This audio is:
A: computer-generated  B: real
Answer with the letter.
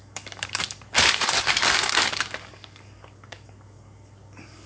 A